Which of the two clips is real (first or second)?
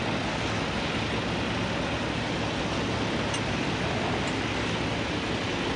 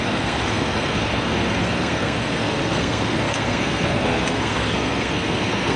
first